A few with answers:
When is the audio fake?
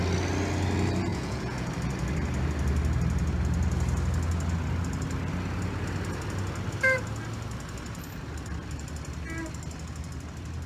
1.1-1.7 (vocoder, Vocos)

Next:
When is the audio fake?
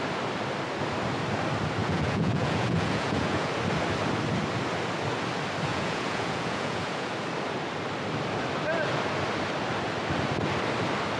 1.8-3.5 (vocoder, Vocos); 5.7-7.1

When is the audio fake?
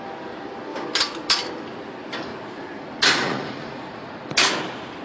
2.3-4.2 (vocoder, Vocos)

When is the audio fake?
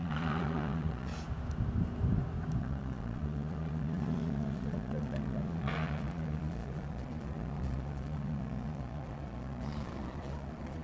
0.0-1.1 (vocoder, Vocos); 2.6-10.8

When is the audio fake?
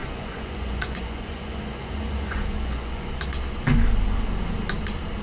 0.0-3.1 (vocoder, Vocos)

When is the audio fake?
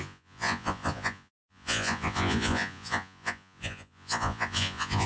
0.0-5.1 (vocoder, Vocos)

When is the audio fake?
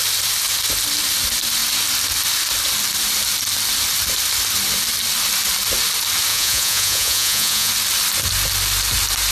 6.3-7.7 (vocoder, Vocos)